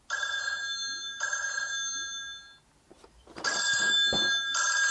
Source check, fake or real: real